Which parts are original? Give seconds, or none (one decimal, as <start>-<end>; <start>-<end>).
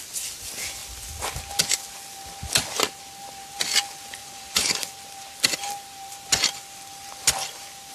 0.0-4.2; 4.9-7.9